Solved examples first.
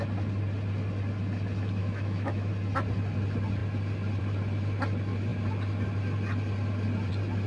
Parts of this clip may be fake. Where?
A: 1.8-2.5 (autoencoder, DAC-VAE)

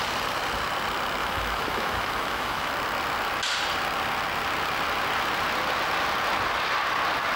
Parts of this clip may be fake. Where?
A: 1.2-2.7 (autoencoder, DAC-VAE)

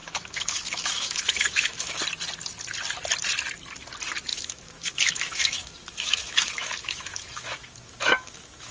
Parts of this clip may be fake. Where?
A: 0.0-2.0 (autoencoder, DAC-VAE); 4.3-8.7

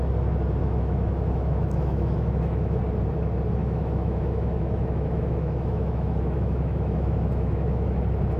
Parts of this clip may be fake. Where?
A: 0.6-2.8 (autoencoder, DAC-VAE); 3.6-8.0

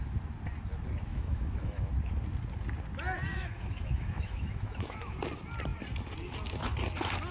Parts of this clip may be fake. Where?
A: 1.1-1.9 (autoencoder, DAC-VAE); 3.3-5.1

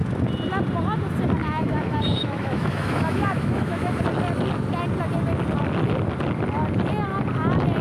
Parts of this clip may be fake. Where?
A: 1.4-4.0 (autoencoder, DAC-VAE)

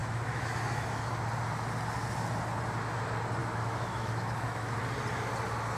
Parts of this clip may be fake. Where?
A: 0.0-1.1 (autoencoder, DAC-VAE); 3.4-4.8

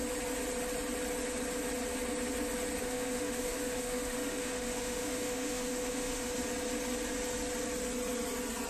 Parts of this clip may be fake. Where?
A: 2.8-6.3 (autoencoder, DAC-VAE)